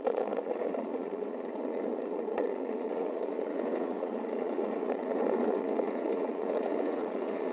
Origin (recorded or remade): remade